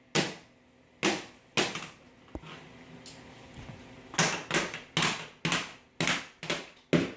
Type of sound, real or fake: real